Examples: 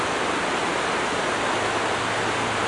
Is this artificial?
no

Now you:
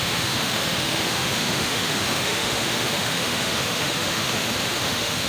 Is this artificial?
yes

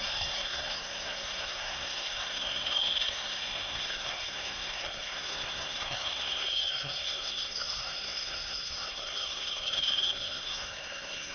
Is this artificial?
yes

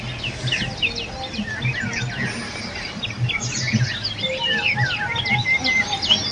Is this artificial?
no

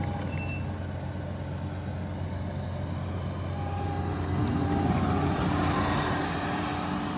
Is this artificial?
no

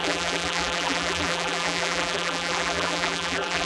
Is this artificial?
yes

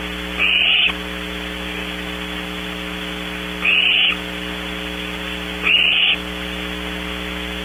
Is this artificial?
no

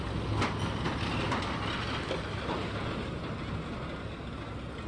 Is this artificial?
no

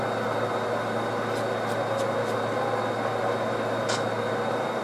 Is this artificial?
no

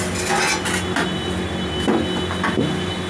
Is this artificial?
no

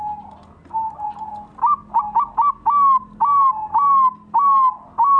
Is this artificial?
no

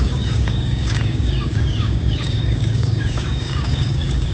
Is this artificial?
yes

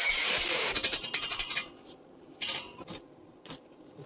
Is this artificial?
yes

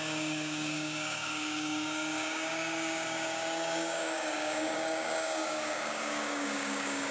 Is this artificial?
yes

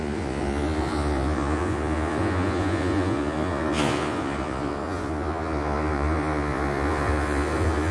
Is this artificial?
yes